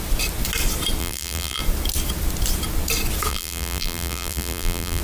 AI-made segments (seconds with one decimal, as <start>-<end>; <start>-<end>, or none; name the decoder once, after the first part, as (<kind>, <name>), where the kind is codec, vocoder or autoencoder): 1.0-1.6 (vocoder, BigVGAN v2); 3.3-5.0